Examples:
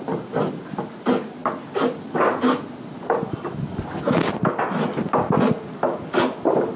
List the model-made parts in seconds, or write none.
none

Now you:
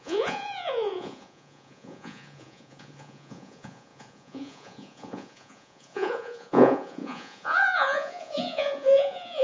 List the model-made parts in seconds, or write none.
0.0-9.4 (vocoder, Vocos)

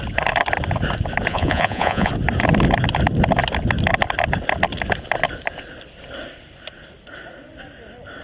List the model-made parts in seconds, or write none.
1.3-2.1 (vocoder, Vocos)

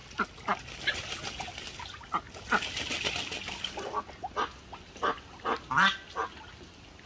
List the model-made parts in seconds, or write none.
none

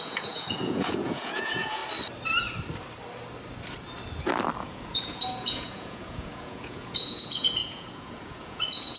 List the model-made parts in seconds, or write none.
0.0-1.8 (vocoder, Vocos); 4.6-9.0

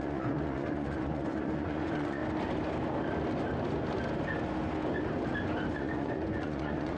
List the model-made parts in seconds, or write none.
0.0-2.2 (vocoder, Vocos); 5.7-7.0